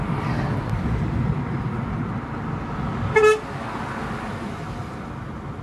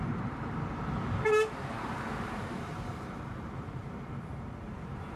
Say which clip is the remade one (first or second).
second